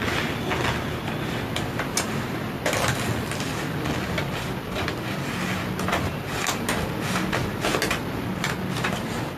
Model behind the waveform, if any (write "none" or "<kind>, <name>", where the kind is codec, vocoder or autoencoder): none